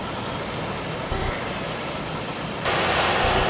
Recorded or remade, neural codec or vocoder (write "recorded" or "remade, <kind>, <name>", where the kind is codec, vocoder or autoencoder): recorded